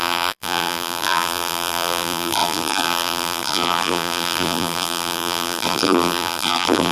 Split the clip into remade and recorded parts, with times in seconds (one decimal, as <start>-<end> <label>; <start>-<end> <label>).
0.0-6.9 remade